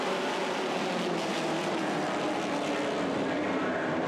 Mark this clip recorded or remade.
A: recorded